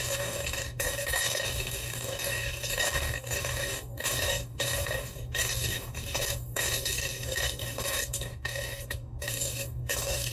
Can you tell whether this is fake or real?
fake